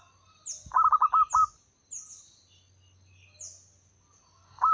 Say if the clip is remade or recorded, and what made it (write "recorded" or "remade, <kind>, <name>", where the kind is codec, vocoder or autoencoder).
recorded